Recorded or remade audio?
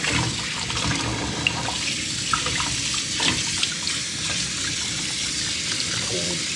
recorded